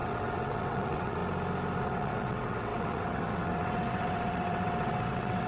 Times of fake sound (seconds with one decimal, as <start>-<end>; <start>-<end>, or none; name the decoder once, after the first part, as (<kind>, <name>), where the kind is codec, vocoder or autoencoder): 0.0-1.2 (vocoder, WaveNeXt); 1.8-5.5